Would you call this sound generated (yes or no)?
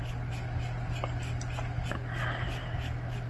no